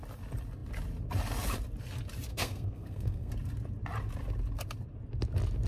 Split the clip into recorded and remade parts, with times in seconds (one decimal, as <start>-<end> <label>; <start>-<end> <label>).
0.0-2.3 recorded; 2.3-3.3 remade; 3.3-5.7 recorded